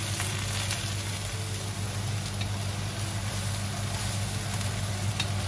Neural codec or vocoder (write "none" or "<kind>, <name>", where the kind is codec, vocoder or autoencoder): none